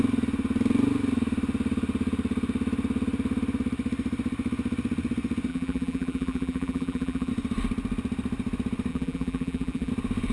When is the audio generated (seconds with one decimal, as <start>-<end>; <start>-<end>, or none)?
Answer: 5.5-7.3; 8.9-9.9